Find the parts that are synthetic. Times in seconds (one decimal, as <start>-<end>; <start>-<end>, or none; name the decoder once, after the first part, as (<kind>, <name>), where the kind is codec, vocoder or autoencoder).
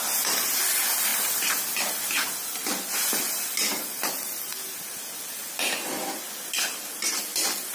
none